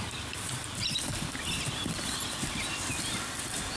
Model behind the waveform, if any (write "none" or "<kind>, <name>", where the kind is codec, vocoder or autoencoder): none